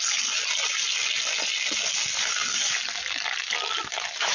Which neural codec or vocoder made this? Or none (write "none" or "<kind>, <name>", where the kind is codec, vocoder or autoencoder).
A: none